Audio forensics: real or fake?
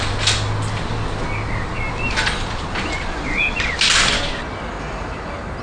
real